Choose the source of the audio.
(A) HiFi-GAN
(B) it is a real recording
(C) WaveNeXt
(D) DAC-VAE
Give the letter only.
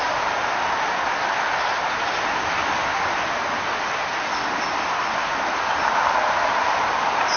B